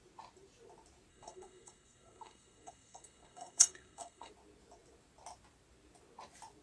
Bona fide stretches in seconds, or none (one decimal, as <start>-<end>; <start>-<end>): 0.0-1.1; 4.3-6.6